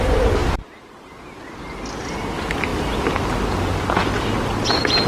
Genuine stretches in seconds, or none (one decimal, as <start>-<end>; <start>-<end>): 0.0-5.1